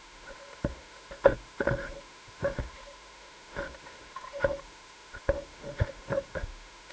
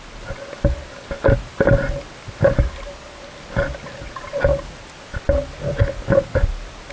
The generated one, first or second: first